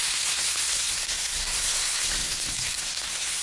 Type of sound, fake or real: fake